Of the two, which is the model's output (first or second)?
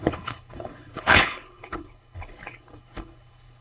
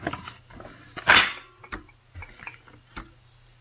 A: first